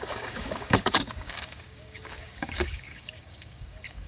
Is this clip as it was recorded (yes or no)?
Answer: no